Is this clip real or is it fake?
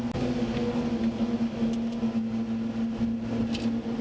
real